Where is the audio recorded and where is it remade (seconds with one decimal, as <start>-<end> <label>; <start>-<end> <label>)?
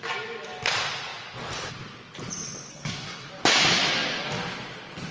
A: 0.0-2.7 recorded; 2.7-3.3 remade; 3.3-5.1 recorded